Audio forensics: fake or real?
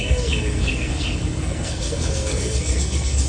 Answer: fake